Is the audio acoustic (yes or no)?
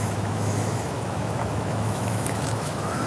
no